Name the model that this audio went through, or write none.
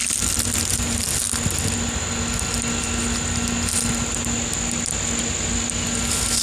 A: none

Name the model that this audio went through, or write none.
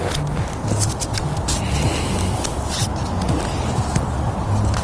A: none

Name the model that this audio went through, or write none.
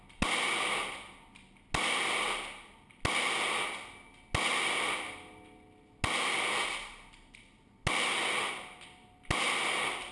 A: none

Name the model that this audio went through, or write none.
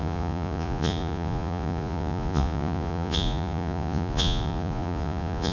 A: vocoder, Vocos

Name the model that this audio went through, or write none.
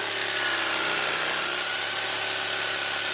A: none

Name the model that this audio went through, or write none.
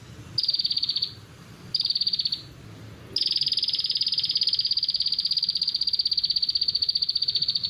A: none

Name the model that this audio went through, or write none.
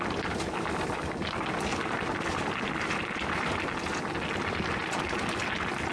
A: none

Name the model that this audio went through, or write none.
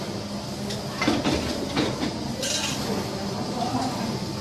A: none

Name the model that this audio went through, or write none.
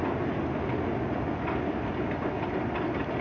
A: none